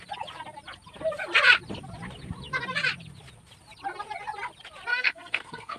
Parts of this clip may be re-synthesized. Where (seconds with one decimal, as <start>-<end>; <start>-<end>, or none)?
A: 4.9-5.8